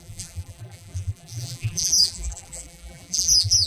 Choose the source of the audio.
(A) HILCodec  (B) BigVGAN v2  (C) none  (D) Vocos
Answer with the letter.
B